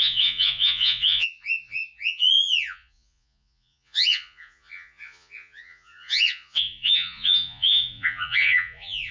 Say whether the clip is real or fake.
fake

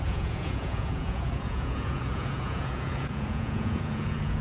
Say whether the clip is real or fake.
fake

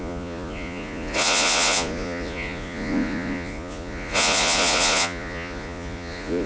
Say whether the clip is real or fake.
fake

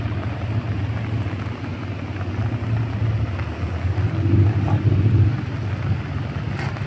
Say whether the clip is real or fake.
real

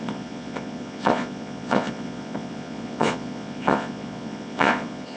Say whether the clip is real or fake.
fake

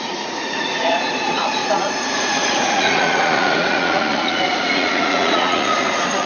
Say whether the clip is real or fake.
fake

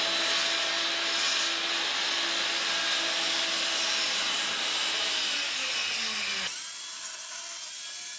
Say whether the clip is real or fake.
real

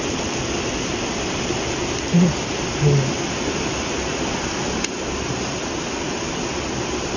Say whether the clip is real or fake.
real